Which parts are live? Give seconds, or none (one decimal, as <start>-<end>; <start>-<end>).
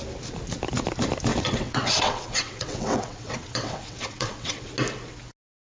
0.0-1.3; 4.7-5.7